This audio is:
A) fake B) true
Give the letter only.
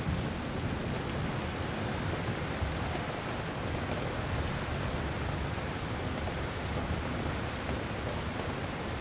B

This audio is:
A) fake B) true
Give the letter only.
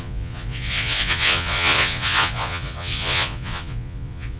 A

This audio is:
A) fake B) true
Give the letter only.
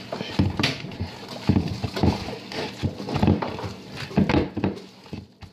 B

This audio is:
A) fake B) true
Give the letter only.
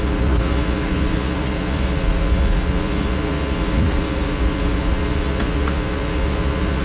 A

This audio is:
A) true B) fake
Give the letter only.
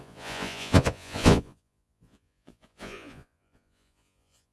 B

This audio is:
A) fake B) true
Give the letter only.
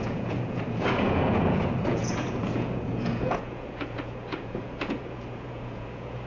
A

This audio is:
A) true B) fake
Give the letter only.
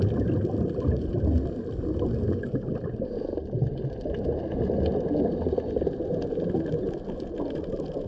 A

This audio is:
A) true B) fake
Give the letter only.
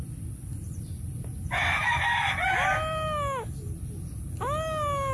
A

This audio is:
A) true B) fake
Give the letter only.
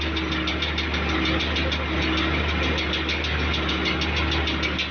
A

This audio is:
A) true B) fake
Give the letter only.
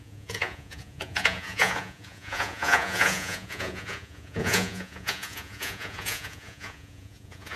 B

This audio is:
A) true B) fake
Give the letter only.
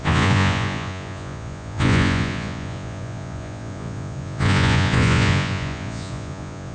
B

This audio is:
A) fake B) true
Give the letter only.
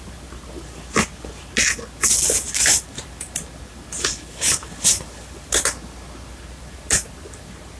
B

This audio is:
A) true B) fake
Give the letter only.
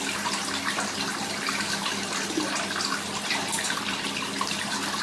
A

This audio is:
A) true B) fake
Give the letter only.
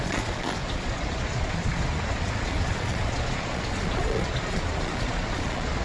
B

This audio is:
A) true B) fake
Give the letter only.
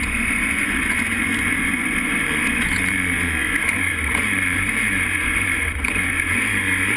B